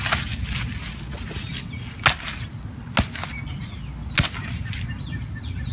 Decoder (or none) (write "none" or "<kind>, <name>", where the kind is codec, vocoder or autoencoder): none